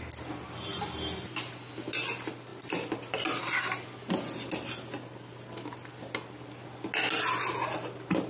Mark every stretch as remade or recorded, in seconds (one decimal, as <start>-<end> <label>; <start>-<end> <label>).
0.0-8.3 recorded

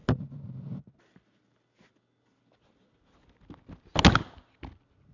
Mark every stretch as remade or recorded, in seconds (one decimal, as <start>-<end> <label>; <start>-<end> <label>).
0.0-5.1 recorded

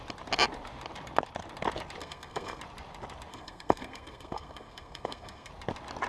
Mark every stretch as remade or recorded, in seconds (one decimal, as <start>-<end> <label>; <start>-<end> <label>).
0.0-2.0 recorded; 2.0-2.6 remade; 2.6-3.3 recorded; 3.3-5.5 remade; 5.5-6.1 recorded

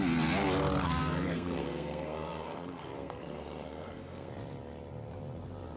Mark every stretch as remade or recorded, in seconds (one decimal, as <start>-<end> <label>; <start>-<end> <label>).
0.0-0.8 recorded; 0.8-4.3 remade; 4.3-5.8 recorded

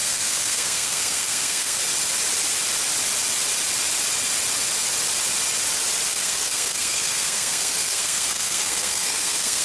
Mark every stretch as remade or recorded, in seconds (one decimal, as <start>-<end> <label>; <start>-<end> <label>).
0.0-1.8 remade; 1.8-6.1 recorded; 6.1-9.6 remade

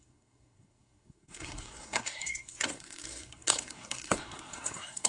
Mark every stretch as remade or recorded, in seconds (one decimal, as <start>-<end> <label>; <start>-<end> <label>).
0.0-5.1 remade

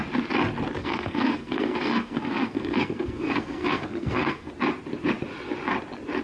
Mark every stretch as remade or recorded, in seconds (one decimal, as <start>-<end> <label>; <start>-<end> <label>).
0.0-0.8 recorded; 0.8-4.5 remade; 4.5-6.2 recorded

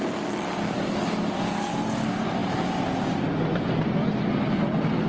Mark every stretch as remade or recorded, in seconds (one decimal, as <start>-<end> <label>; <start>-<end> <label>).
0.0-5.1 recorded